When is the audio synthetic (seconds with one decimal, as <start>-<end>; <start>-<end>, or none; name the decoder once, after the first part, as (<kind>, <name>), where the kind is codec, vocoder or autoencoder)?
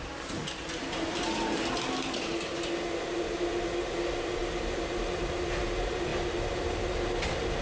none